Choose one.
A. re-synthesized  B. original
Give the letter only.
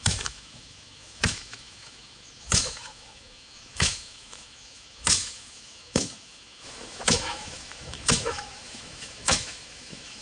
A